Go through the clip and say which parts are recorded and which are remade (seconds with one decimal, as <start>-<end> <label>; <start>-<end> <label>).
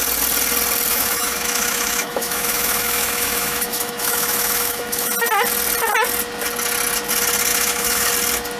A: 0.0-0.9 recorded; 0.9-5.1 remade; 5.1-7.5 recorded; 7.5-8.1 remade; 8.1-8.6 recorded